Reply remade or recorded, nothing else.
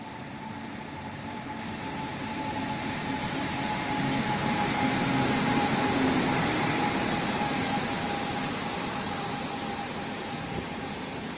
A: remade